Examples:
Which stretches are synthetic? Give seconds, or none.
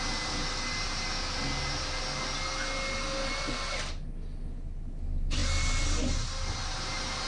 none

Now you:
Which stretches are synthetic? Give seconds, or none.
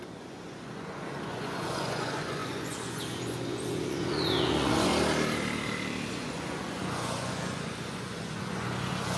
0.0-4.9 (vocoder, Vocos); 6.1-9.2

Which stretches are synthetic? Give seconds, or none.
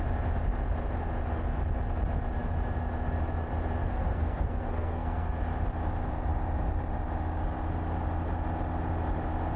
3.8-5.3 (codec, SNAC)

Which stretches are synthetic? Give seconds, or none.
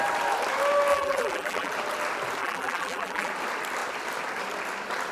0.9-1.7 (vocoder, BigVGAN v2); 2.4-3.3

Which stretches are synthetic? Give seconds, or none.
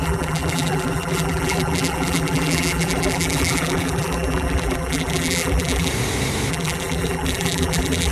0.0-5.9 (vocoder, BigVGAN v2); 6.5-8.1